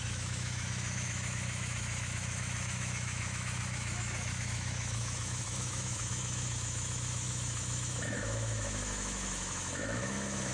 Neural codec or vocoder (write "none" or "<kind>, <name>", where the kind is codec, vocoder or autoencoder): autoencoder, DAC-VAE